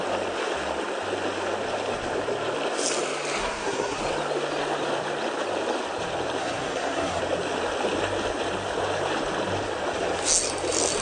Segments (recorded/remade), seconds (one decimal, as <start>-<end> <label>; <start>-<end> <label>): 0.0-3.4 recorded; 3.4-4.0 remade; 4.0-6.4 recorded; 6.4-7.2 remade; 7.2-11.0 recorded